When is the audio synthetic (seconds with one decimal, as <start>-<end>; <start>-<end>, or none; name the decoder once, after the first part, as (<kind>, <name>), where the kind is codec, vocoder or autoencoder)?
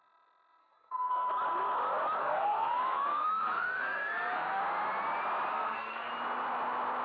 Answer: 0.6-1.3 (codec, SNAC); 2.2-4.6; 5.5-6.1